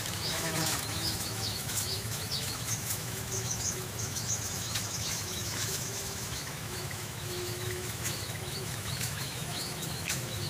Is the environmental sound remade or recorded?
remade